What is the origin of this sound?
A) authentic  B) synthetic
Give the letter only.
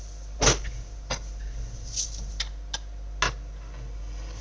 A